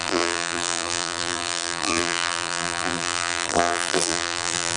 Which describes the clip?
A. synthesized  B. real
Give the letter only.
A